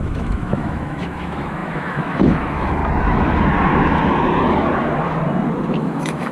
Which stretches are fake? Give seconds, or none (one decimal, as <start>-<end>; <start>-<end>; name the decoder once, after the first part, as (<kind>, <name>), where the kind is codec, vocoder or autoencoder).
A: 0.0-2.8 (autoencoder, DAC-VAE); 5.8-6.3